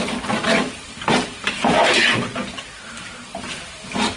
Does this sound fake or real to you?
real